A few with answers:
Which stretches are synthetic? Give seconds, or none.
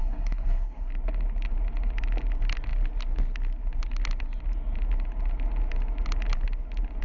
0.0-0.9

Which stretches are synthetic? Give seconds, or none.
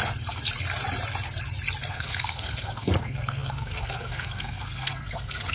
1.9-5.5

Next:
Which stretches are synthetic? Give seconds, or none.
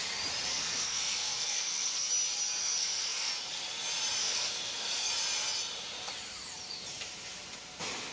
0.5-2.1; 2.6-3.3; 4.2-5.1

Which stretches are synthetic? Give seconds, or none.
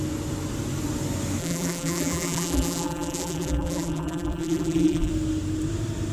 1.4-5.1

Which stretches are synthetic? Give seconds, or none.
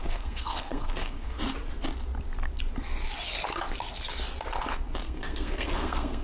0.0-1.4; 5.0-6.2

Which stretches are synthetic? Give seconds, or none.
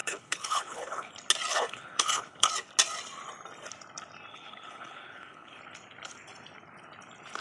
0.0-1.1; 1.5-2.5; 4.3-5.6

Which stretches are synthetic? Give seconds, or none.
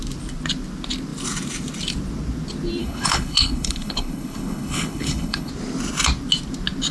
2.8-5.5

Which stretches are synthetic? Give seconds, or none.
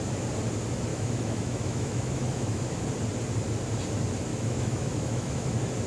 0.9-2.8; 4.3-5.5